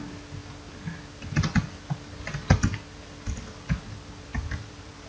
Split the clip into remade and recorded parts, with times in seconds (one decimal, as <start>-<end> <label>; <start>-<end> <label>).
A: 0.0-4.3 recorded; 4.3-5.1 remade